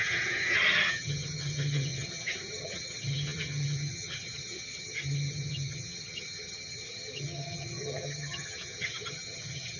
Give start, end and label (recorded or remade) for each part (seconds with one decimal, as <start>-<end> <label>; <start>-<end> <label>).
0.0-9.8 remade